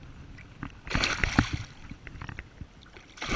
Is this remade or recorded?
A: recorded